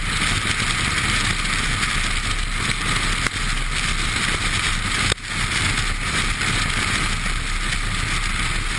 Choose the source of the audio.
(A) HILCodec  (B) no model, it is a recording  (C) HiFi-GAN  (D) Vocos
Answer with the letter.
B